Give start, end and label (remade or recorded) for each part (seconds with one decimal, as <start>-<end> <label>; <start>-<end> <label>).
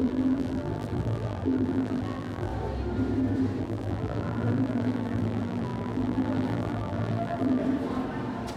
0.0-2.5 remade; 2.5-3.6 recorded; 3.6-7.6 remade; 7.6-8.6 recorded